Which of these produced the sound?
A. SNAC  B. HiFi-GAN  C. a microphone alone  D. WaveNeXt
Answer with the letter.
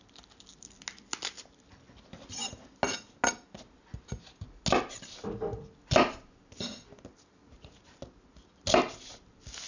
C